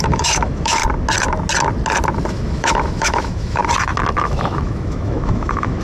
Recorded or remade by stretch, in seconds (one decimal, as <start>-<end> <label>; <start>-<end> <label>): 0.0-0.8 remade; 0.8-2.3 recorded; 2.3-3.6 remade; 3.6-4.2 recorded; 4.2-5.8 remade